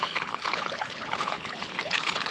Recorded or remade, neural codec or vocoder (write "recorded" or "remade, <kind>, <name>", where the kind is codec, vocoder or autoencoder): remade, codec, HILCodec